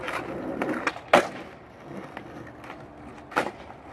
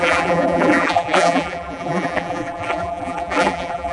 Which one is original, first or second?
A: first